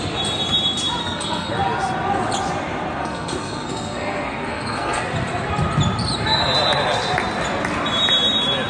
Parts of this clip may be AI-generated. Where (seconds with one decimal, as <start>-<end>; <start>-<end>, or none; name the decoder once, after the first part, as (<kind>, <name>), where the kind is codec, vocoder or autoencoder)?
1.0-1.5 (codec, SNAC); 3.0-5.0